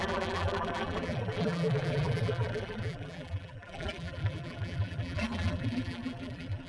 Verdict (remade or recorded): remade